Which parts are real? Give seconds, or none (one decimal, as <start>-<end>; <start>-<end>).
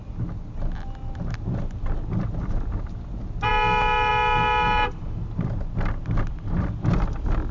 0.0-7.5